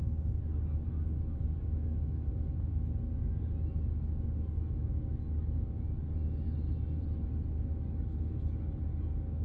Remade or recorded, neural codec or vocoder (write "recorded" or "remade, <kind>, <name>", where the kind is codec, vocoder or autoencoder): recorded